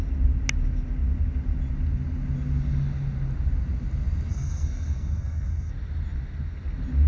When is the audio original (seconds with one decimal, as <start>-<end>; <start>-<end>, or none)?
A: 0.0-4.3; 5.7-7.1